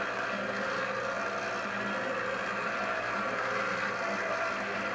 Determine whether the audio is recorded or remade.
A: recorded